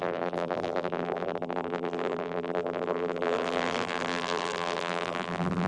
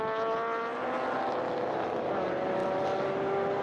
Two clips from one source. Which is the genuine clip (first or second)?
second